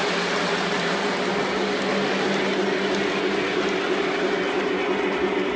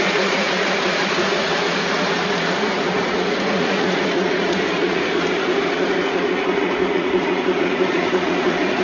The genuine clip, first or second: first